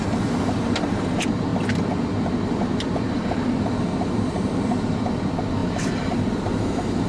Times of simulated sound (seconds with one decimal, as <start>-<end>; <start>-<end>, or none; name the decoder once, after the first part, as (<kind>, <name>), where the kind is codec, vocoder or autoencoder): 5.6-6.5 (vocoder, BigVGAN v2)